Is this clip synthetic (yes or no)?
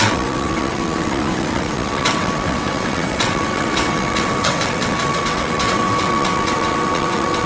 yes